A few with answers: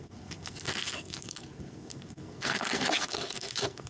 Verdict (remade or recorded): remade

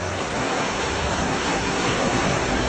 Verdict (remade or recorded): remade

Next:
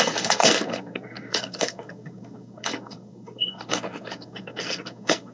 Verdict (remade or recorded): remade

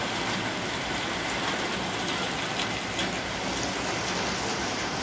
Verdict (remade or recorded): recorded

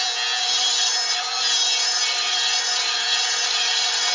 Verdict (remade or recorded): recorded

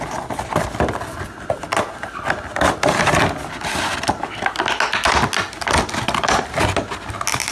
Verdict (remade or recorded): recorded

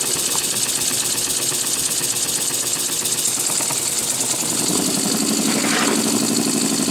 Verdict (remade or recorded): recorded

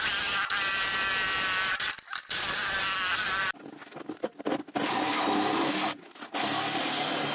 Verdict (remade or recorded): recorded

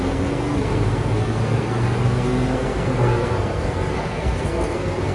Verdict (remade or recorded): remade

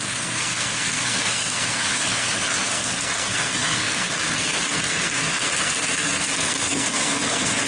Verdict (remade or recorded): remade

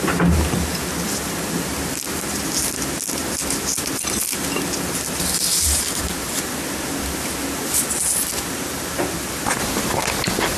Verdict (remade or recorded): recorded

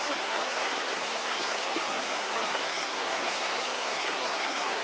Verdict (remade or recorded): remade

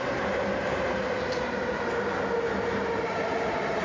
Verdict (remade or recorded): recorded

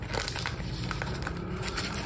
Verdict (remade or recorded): recorded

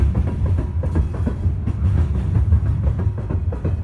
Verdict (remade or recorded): recorded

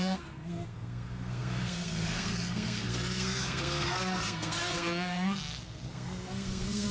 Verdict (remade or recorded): remade